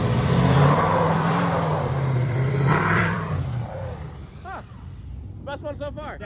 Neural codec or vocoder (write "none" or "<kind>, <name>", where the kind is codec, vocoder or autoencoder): vocoder, BigVGAN v2